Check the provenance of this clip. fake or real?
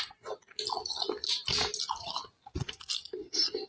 real